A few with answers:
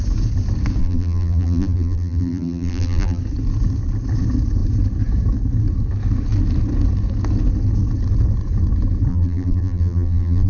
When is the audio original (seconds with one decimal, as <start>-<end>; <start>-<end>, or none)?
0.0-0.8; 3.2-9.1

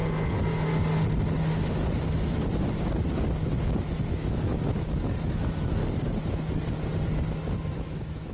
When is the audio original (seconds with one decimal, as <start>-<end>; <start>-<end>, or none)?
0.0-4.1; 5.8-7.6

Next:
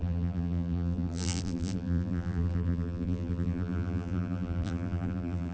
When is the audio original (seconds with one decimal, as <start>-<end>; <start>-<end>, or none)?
none